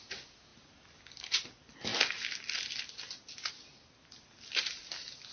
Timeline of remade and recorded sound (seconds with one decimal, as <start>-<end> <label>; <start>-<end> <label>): 0.0-5.3 recorded